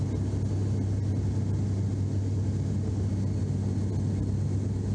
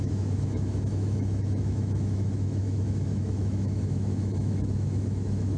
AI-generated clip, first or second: second